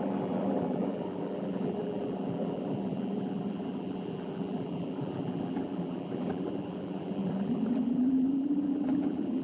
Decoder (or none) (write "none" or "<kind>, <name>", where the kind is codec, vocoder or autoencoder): vocoder, BigVGAN v2